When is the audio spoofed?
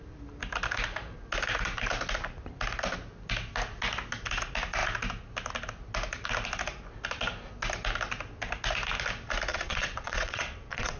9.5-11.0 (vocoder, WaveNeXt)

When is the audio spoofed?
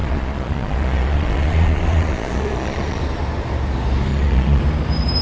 0.0-3.0 (vocoder, Vocos); 4.1-4.6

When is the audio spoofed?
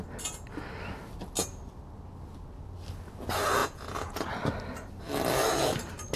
3.6-4.3 (vocoder, Vocos)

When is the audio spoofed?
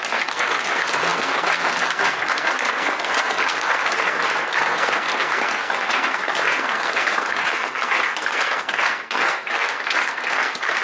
0.0-10.8 (codec, SNAC)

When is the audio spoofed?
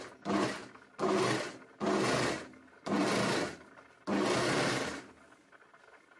none